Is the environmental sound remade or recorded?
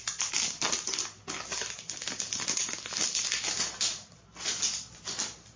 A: remade